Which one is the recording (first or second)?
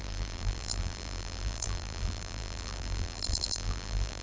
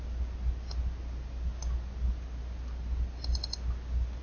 second